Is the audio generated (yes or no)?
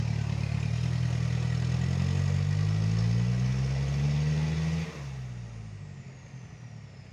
no